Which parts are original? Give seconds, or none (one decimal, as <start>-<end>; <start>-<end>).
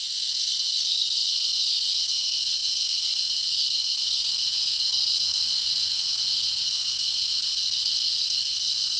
none